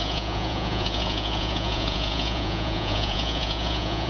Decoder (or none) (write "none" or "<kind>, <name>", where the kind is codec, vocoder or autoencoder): vocoder, Vocos